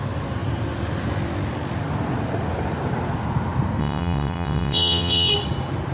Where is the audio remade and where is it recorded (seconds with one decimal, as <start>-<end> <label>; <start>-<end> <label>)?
0.0-3.8 recorded; 3.8-5.3 remade; 5.3-5.9 recorded